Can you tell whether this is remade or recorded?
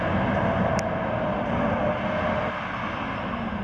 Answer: recorded